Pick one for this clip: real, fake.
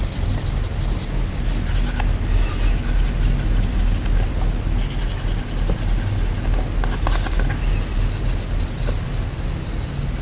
real